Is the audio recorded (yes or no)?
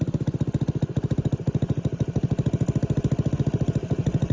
yes